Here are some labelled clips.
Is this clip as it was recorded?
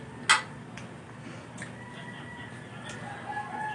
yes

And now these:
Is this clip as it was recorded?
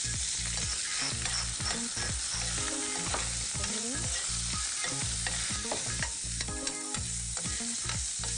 yes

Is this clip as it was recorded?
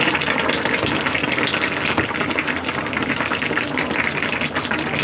yes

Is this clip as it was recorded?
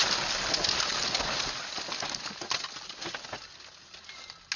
yes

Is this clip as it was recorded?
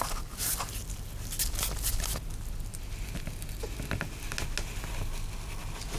yes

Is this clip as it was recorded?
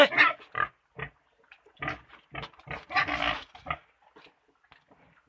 yes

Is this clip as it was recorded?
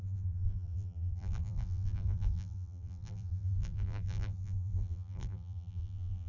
no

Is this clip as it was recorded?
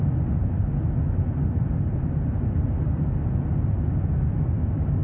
yes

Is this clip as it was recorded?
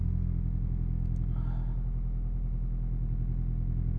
yes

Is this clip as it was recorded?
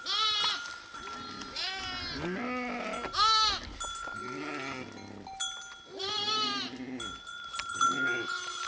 yes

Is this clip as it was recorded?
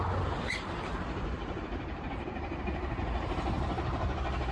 no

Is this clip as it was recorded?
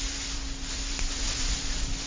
no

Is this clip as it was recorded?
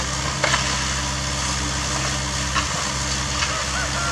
yes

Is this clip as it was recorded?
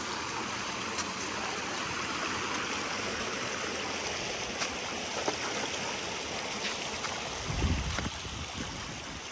yes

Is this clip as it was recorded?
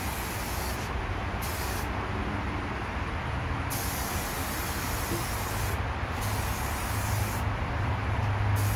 yes